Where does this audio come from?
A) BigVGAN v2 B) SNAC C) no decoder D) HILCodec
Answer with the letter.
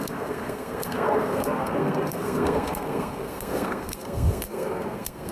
B